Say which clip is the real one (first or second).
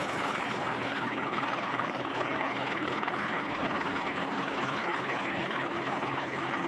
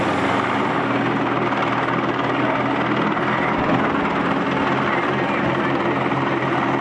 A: second